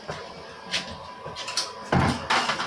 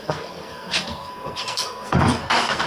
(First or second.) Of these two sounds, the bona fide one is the first